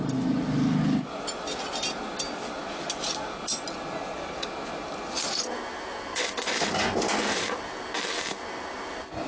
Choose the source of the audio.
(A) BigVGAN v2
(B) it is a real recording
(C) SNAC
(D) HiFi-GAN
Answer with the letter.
B